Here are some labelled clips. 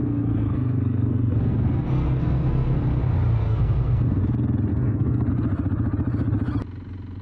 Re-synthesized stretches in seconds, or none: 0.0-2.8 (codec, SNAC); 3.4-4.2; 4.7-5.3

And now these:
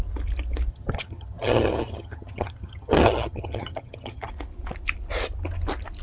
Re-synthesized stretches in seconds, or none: 0.7-4.3 (vocoder, HiFi-GAN)

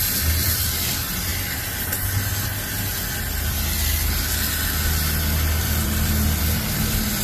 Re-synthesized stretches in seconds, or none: 0.0-1.3 (vocoder, BigVGAN v2); 5.6-7.2

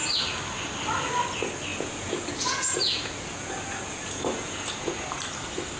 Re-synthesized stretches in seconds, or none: 1.7-5.2 (vocoder, Vocos)

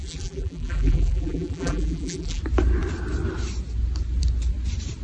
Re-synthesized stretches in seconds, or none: 0.0-2.4 (vocoder, BigVGAN v2)

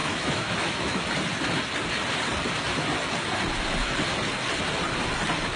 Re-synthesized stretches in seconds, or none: 0.0-1.0 (autoencoder, DAC-VAE)